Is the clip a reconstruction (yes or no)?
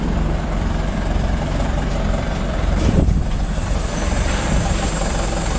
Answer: yes